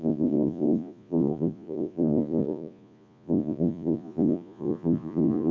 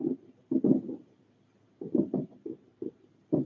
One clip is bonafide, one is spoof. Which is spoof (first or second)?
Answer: first